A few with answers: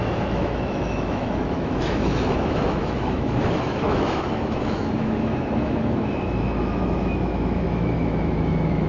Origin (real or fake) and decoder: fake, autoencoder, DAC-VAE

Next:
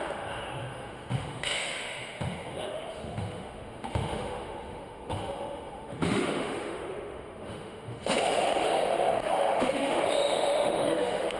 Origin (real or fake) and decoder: fake, autoencoder, DAC-VAE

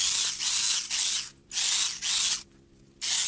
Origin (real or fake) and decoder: real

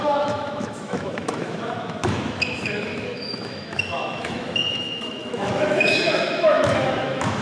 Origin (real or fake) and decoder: fake, autoencoder, DAC-VAE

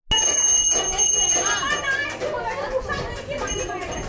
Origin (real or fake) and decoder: real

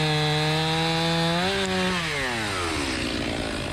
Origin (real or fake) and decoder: real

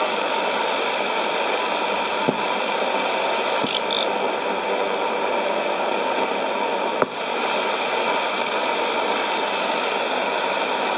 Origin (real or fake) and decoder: real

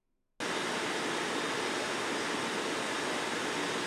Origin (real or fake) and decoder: real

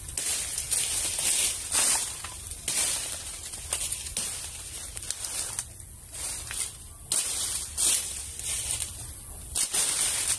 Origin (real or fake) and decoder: real